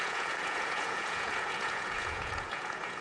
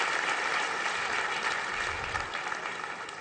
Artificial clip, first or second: first